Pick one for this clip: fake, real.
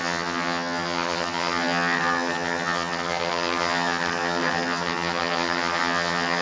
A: fake